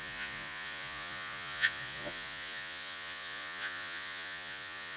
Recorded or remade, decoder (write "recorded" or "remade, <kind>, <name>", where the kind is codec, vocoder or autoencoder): remade, vocoder, Vocos